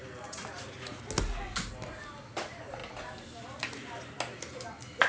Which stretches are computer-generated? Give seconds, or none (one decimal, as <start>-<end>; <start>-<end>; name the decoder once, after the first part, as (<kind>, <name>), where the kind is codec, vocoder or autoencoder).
none